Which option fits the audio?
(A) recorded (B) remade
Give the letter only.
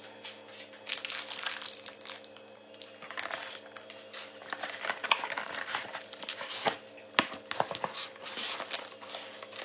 A